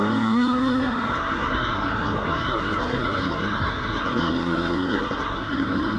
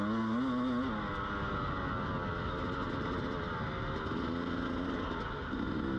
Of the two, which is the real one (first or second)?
second